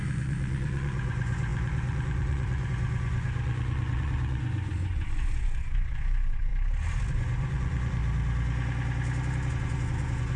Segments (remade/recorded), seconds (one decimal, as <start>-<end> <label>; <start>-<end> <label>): 0.0-6.5 remade; 6.5-7.1 recorded; 7.1-8.0 remade; 8.0-9.5 recorded; 9.5-10.4 remade